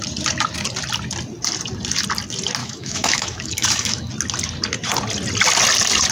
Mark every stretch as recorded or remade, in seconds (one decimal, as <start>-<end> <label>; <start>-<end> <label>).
0.0-2.6 recorded; 2.6-4.1 remade; 4.1-6.1 recorded